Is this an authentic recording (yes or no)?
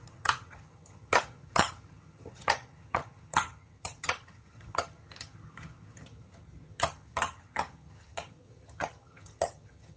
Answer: no